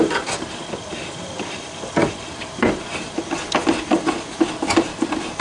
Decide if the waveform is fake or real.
real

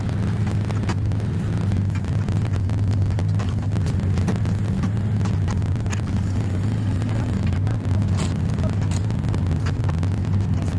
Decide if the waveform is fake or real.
real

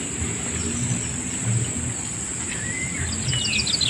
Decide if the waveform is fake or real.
real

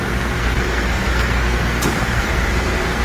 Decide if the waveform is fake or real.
fake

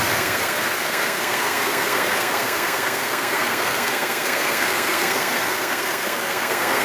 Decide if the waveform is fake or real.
fake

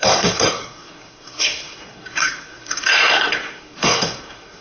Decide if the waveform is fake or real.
fake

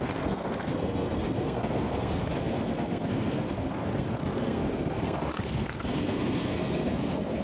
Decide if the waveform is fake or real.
fake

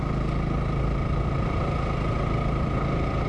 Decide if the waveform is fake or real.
real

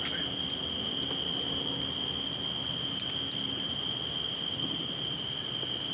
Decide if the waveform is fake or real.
real